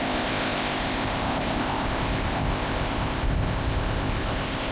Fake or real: fake